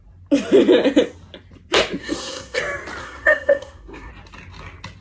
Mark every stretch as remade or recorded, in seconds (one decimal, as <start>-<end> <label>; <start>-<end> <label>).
0.0-2.0 recorded; 2.0-2.6 remade; 2.6-3.0 recorded; 3.0-4.1 remade; 4.1-5.0 recorded